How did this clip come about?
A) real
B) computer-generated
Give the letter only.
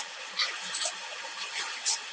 A